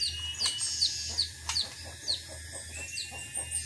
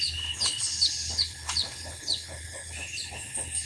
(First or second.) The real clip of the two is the first